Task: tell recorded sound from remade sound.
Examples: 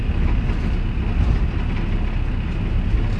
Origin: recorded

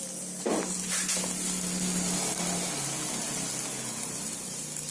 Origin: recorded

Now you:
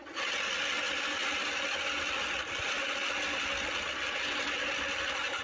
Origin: recorded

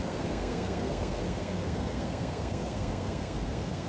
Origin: remade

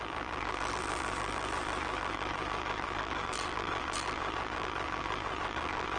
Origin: remade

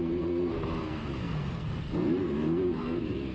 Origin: remade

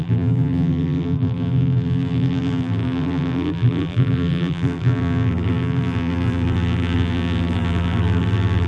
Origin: remade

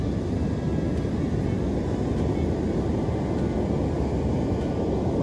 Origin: recorded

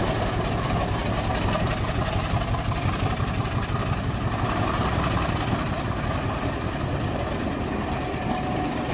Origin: recorded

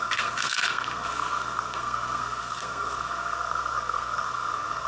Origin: remade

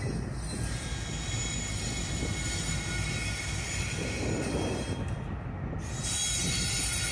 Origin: recorded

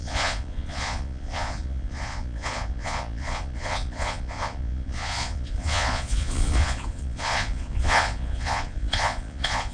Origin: remade